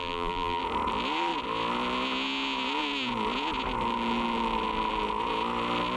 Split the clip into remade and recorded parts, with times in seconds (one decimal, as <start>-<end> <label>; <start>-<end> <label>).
0.0-0.6 remade; 0.6-6.0 recorded